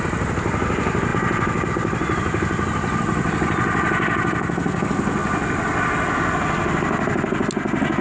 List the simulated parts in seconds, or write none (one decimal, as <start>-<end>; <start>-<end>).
0.0-1.1; 1.7-5.2